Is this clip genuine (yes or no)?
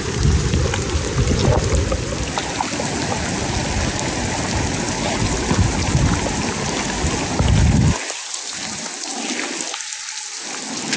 yes